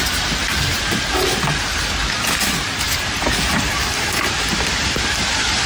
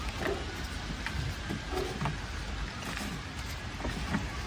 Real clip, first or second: second